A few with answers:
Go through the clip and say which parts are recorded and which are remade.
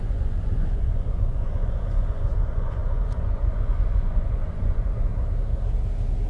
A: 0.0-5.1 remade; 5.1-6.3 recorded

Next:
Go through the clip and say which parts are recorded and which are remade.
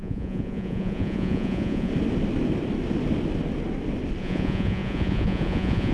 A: 0.0-1.9 remade; 1.9-4.2 recorded; 4.2-5.9 remade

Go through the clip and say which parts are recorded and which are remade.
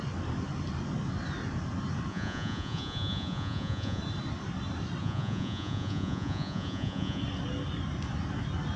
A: 0.0-2.1 recorded; 2.1-4.0 remade; 4.0-5.0 recorded; 5.0-7.2 remade; 7.2-8.8 recorded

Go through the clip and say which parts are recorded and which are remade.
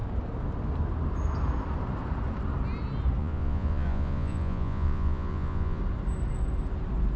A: 0.0-3.2 recorded; 3.2-5.8 remade; 5.8-7.2 recorded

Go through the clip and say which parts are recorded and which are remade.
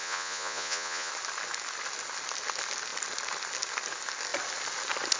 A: 0.0-1.1 remade; 1.1-5.2 recorded